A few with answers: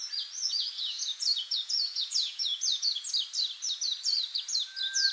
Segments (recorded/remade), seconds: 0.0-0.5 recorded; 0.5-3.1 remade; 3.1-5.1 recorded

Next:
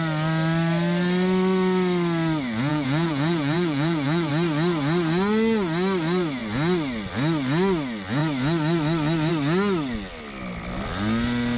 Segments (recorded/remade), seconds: 0.0-2.7 recorded; 2.7-4.3 remade; 4.3-11.6 recorded

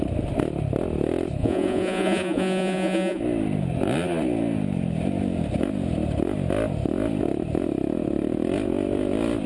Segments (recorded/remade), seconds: 0.0-1.4 recorded; 1.4-3.2 remade; 3.2-9.5 recorded

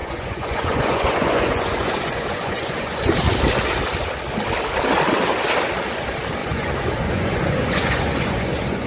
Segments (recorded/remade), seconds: 0.0-3.0 remade; 3.0-6.4 recorded; 6.4-8.9 remade